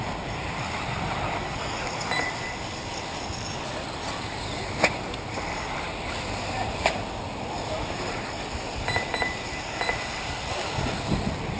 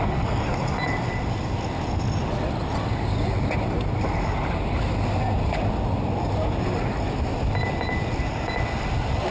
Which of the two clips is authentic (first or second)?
second